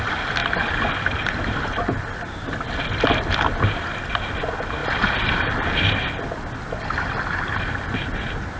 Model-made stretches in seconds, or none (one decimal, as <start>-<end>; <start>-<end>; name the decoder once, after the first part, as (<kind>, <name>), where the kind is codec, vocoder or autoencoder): none